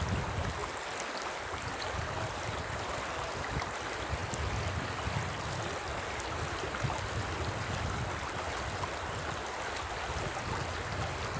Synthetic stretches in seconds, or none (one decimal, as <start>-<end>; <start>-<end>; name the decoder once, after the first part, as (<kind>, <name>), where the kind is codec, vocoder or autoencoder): none